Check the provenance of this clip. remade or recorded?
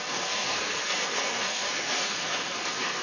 remade